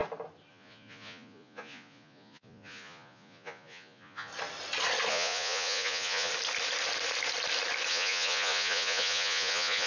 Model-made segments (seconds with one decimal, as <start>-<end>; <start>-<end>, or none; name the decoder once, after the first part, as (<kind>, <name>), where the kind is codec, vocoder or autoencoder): 0.5-4.3 (vocoder, Vocos); 5.1-6.3; 7.9-9.9